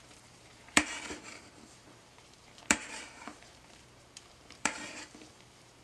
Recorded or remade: remade